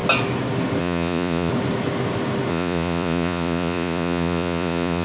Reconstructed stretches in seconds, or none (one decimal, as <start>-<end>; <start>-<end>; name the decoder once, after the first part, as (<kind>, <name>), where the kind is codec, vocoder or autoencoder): 0.8-1.5 (vocoder, Vocos); 2.5-5.0